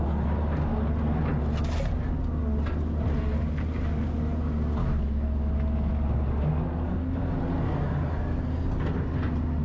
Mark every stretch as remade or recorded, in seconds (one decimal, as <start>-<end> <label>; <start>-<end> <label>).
0.0-4.8 recorded; 4.8-5.9 remade; 5.9-9.6 recorded